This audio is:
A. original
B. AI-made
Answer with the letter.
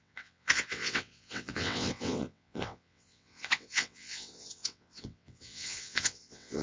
B